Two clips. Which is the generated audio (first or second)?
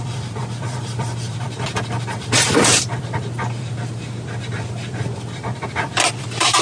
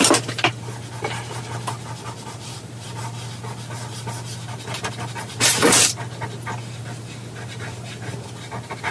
first